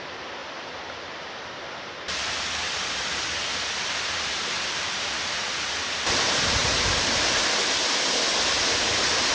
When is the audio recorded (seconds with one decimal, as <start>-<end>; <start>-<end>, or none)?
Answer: 0.0-0.4; 3.3-6.6; 7.3-9.3